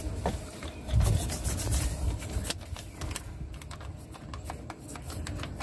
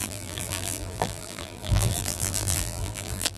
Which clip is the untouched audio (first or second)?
first